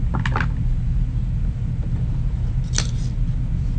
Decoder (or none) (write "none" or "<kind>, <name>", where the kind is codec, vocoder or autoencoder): none